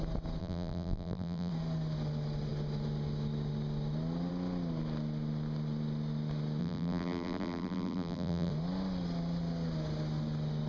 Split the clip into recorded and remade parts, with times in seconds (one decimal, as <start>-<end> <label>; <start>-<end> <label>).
0.0-0.4 recorded; 0.4-1.5 remade; 1.5-6.6 recorded; 6.6-8.5 remade; 8.5-10.7 recorded